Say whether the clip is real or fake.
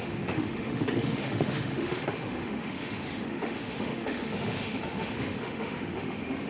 fake